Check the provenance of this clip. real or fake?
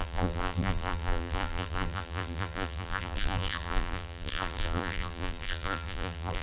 fake